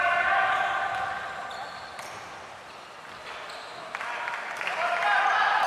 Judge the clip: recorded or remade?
remade